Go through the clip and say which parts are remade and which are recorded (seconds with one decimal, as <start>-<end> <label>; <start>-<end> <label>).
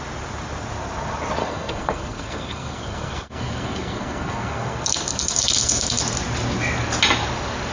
0.0-1.4 recorded; 1.4-6.0 remade; 6.0-7.7 recorded